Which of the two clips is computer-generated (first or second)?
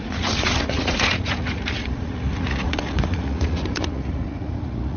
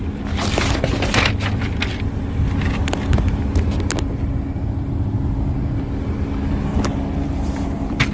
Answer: first